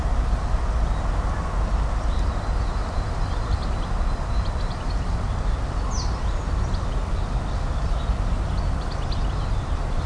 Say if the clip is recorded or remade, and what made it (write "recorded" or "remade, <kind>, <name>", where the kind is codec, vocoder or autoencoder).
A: recorded